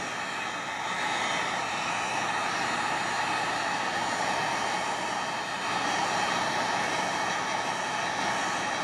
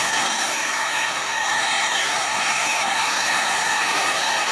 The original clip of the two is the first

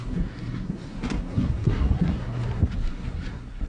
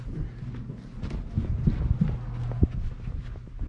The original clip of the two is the second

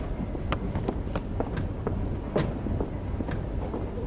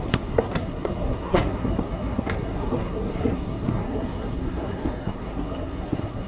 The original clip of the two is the first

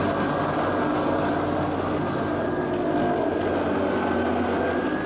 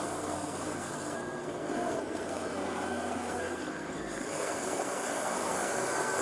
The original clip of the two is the first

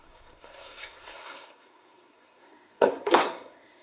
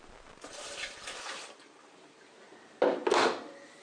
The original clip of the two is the second